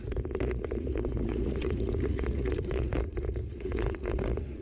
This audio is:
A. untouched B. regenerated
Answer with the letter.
B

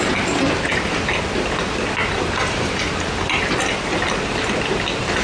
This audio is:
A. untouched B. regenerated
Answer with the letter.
A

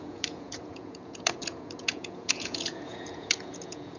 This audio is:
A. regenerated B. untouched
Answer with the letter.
A